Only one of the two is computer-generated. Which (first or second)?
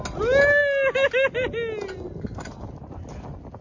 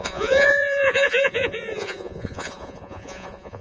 second